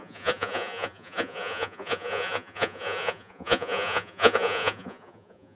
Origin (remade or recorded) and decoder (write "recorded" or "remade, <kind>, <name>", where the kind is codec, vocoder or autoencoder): remade, vocoder, Vocos